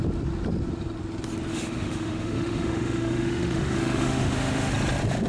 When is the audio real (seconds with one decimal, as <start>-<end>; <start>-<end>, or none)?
0.0-1.5; 4.7-5.3